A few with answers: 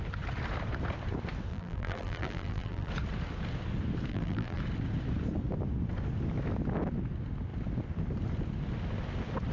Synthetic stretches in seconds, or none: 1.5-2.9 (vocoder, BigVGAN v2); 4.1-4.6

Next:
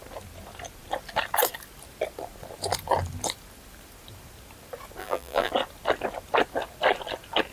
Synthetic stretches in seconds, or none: 5.0-5.5 (vocoder, BigVGAN v2)